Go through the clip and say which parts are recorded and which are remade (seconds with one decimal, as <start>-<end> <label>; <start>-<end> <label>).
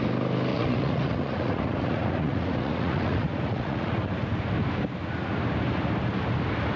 0.0-0.5 recorded; 0.5-4.1 remade; 4.1-6.8 recorded